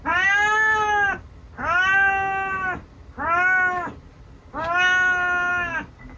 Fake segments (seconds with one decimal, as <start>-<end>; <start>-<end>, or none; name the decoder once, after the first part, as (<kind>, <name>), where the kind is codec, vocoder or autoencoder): none